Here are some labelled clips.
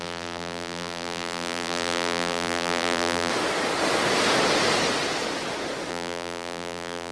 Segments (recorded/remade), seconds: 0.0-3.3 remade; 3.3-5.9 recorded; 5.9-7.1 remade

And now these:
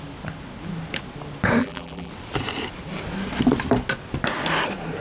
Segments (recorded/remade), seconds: 0.0-1.6 recorded; 1.6-2.1 remade; 2.1-5.0 recorded

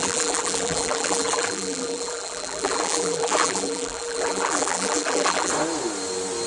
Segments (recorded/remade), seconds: 0.0-5.5 remade; 5.5-6.5 recorded

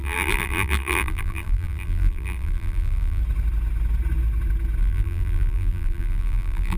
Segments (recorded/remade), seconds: 0.0-3.2 remade; 3.2-4.8 recorded; 4.8-6.8 remade

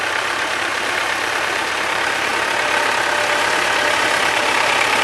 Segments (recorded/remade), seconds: 0.0-2.3 remade; 2.3-4.3 recorded; 4.3-5.0 remade

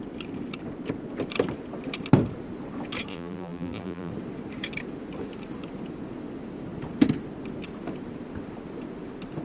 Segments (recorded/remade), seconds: 0.0-3.1 recorded; 3.1-4.1 remade; 4.1-9.4 recorded